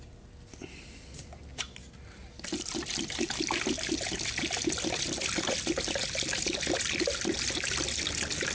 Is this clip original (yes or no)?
yes